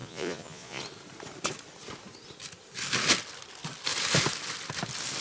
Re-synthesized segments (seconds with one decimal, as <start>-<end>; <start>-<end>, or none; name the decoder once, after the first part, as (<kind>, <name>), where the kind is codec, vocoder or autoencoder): 0.0-0.8 (vocoder, Vocos)